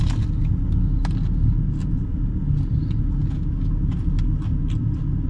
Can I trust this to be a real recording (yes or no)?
yes